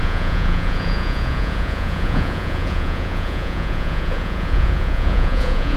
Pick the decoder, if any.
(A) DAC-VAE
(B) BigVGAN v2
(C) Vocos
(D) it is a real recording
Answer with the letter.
C